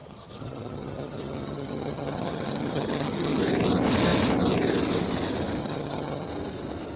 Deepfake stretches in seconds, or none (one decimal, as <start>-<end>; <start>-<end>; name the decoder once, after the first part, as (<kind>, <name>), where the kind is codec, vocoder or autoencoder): 0.0-3.4 (vocoder, HiFi-GAN); 5.6-6.3